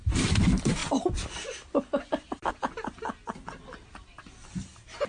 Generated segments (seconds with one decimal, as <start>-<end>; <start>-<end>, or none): none